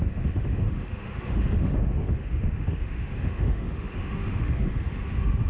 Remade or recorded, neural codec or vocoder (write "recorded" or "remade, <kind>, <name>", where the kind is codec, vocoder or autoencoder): remade, autoencoder, DAC-VAE